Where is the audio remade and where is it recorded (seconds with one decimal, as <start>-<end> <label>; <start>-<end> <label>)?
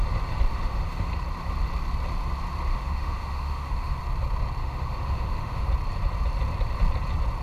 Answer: 0.0-0.5 recorded; 0.5-1.1 remade; 1.1-2.7 recorded; 2.7-4.0 remade; 4.0-4.6 recorded; 4.6-5.7 remade; 5.7-7.4 recorded